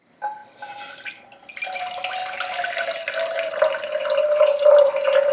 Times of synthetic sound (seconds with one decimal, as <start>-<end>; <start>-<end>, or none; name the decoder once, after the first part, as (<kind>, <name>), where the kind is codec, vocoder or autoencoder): 0.0-2.2 (vocoder, BigVGAN v2); 4.0-5.3